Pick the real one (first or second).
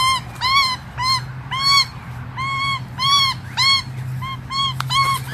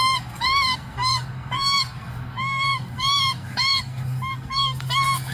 first